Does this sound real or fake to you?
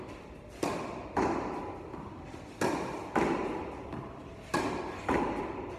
real